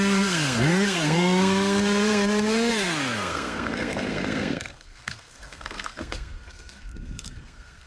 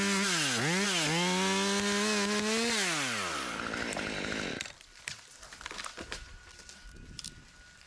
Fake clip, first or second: first